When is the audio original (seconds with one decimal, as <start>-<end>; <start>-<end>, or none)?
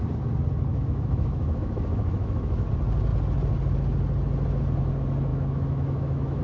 0.0-0.7; 2.7-5.3